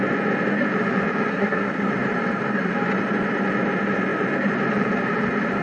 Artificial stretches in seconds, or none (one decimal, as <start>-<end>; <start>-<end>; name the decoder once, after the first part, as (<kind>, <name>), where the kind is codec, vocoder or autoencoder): 1.3-1.9 (codec, SNAC)

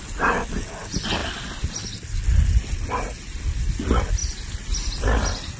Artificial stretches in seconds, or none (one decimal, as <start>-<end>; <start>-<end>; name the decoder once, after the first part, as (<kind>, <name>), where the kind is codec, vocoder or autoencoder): none

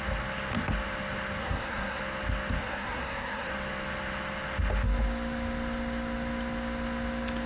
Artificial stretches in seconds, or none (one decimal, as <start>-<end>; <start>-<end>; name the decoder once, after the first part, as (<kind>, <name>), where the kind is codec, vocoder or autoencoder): 1.4-2.0 (codec, SNAC); 2.6-3.5

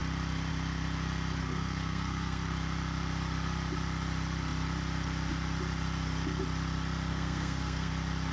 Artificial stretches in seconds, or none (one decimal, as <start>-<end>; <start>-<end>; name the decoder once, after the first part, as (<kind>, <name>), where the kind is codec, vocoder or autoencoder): 1.4-2.5 (codec, SNAC); 7.1-7.9

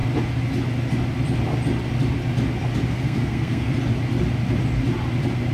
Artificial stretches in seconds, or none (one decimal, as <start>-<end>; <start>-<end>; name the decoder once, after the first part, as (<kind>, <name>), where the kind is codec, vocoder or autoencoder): 2.9-3.7 (codec, SNAC)

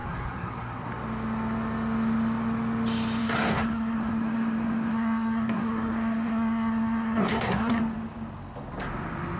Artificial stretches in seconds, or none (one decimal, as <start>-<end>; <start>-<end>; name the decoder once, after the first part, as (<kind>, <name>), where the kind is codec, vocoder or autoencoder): 0.0-0.9 (codec, SNAC); 3.2-7.8

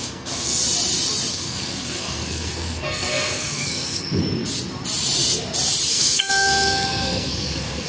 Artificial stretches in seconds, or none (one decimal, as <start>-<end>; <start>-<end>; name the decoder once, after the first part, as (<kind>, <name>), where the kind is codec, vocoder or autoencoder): 0.0-0.6 (codec, SNAC); 1.3-4.2; 5.9-7.9

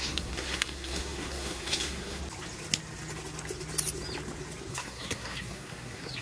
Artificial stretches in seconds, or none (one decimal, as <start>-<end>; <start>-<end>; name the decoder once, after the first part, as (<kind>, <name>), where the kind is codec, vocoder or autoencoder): 0.0-2.2 (codec, SNAC); 4.7-6.2